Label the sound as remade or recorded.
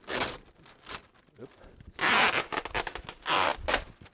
recorded